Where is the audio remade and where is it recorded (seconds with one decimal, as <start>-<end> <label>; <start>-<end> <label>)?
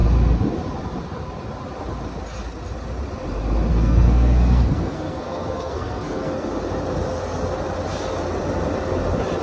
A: 0.0-3.7 recorded; 3.7-6.5 remade; 6.5-9.4 recorded